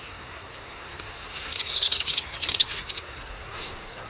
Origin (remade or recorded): remade